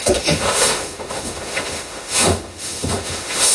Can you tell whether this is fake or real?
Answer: fake